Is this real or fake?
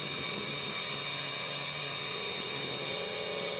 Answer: fake